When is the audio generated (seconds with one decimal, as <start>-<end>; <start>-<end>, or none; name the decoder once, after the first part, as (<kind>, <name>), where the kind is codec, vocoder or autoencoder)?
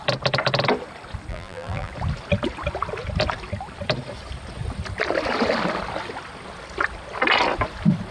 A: 1.3-1.9 (vocoder, BigVGAN v2)